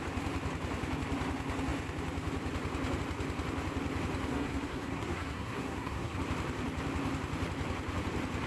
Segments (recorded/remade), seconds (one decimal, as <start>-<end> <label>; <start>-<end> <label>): 0.0-4.3 recorded; 4.3-6.2 remade; 6.2-8.5 recorded